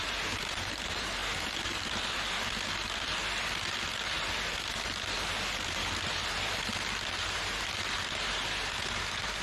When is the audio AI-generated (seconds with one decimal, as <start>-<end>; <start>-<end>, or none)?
0.0-1.2; 5.4-6.2; 7.9-9.4